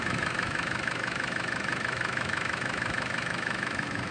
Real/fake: fake